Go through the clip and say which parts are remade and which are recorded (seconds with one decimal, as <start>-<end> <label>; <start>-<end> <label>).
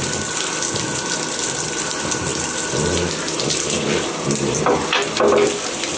0.0-6.0 recorded